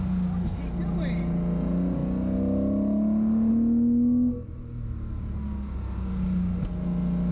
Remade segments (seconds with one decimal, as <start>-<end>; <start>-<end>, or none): none